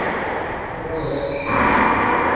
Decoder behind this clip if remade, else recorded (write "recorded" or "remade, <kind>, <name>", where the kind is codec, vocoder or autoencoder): recorded